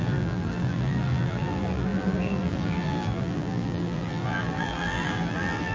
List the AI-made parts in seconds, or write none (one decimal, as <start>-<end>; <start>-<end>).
0.0-5.7